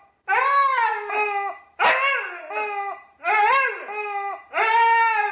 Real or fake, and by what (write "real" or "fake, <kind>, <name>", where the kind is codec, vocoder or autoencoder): real